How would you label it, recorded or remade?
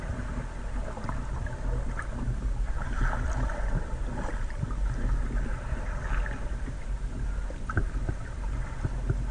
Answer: recorded